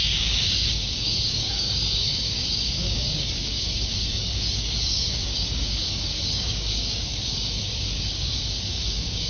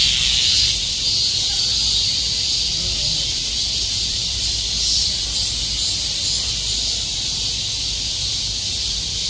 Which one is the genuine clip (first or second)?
second